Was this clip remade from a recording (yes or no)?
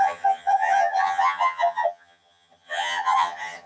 yes